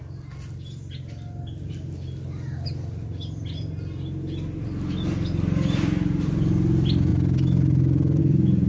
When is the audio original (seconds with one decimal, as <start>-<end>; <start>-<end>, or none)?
0.0-8.7